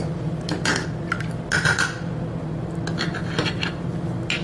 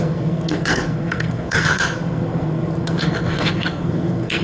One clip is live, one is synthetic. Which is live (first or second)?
first